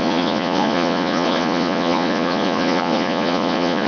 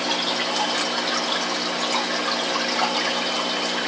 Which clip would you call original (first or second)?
second